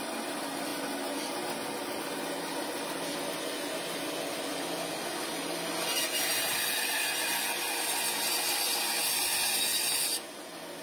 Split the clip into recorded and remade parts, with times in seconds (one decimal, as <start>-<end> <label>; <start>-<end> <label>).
0.0-10.8 recorded